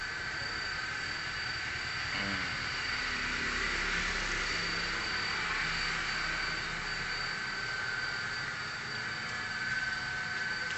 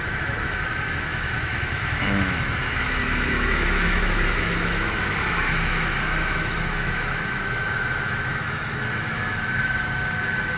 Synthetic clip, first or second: second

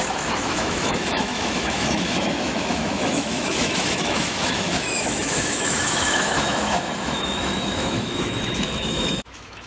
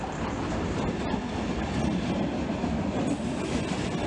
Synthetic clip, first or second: first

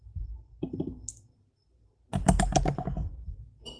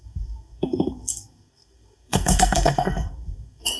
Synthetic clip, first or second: second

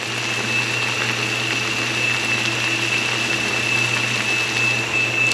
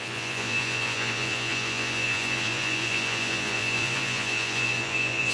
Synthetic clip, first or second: second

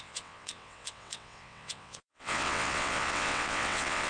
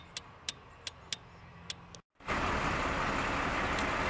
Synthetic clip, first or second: first